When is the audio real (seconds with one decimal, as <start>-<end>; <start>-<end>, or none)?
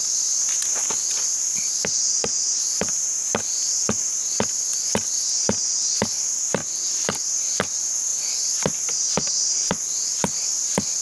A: 0.0-11.0